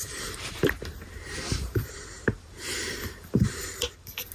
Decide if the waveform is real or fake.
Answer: fake